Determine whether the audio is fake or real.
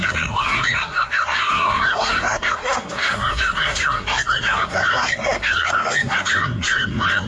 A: fake